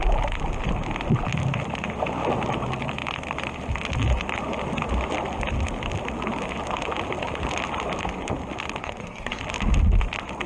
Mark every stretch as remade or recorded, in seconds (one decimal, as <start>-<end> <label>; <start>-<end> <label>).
0.0-8.8 recorded; 8.8-9.4 remade; 9.4-10.5 recorded